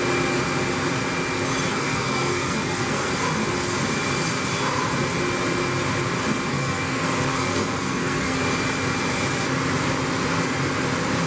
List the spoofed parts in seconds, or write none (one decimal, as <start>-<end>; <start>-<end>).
1.7-3.1; 6.5-8.4